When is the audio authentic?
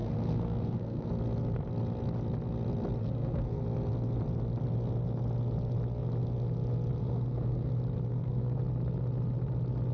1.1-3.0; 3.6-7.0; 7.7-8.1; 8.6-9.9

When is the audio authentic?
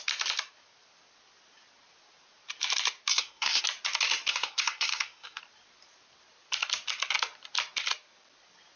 0.0-3.1; 3.6-4.3; 5.4-8.8